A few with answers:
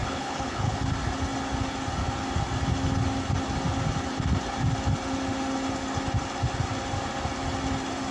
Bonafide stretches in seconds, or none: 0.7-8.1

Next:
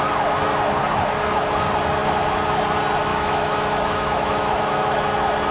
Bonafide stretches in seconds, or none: 0.0-3.1; 5.0-5.5

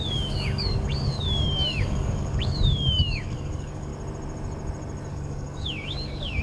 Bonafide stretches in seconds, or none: 3.9-5.1

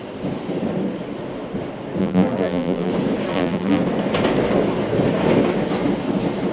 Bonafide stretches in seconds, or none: 0.0-2.0; 2.9-3.3; 3.8-6.5